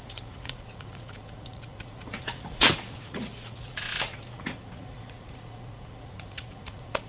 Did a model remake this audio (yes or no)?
yes